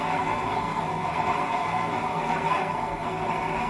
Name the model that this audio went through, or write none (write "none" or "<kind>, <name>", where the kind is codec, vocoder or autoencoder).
codec, SNAC